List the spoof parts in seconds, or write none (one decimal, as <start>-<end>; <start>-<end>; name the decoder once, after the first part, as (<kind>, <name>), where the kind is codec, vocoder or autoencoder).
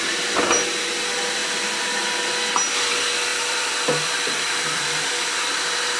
3.3-5.1 (vocoder, BigVGAN v2)